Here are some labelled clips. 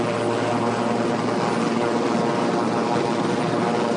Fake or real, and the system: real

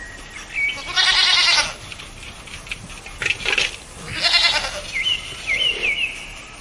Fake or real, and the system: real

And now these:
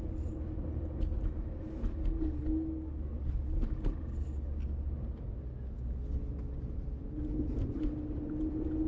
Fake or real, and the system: real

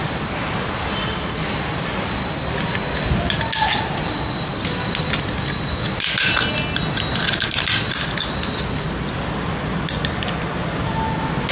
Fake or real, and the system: real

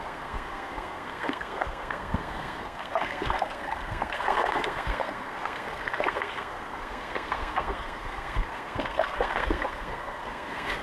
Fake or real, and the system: fake, codec, SNAC